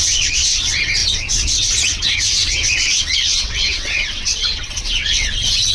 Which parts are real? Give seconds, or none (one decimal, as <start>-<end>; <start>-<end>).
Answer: none